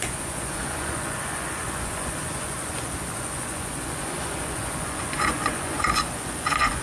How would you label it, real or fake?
fake